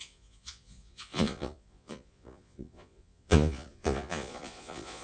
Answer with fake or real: fake